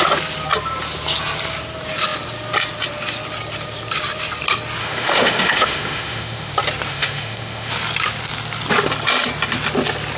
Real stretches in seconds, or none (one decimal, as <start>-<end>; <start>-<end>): 0.0-4.8; 6.5-6.9; 7.7-10.2